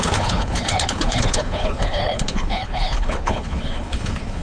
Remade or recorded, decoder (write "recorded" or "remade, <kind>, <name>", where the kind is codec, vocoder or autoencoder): remade, codec, HILCodec